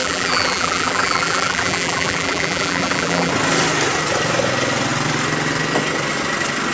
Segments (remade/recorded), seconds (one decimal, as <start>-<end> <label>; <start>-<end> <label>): 0.0-3.3 remade; 3.3-6.7 recorded